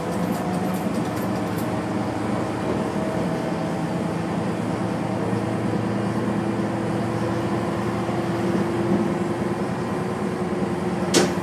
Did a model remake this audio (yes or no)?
no